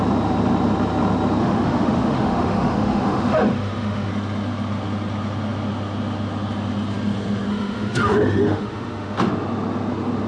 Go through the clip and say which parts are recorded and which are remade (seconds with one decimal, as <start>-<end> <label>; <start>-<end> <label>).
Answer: 0.0-1.4 recorded; 1.4-4.1 remade; 4.1-7.5 recorded; 7.5-9.3 remade; 9.3-10.3 recorded